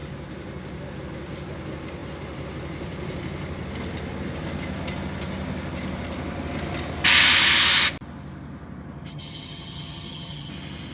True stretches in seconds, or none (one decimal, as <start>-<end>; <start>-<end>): 0.0-9.1; 10.5-10.9